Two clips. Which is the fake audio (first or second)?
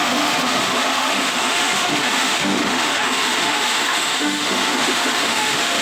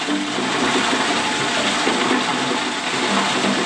first